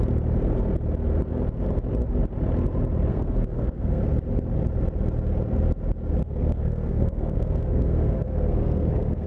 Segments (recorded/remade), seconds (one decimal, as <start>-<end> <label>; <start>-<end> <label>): 0.0-3.1 recorded; 3.1-4.0 remade; 4.0-6.2 recorded; 6.2-9.3 remade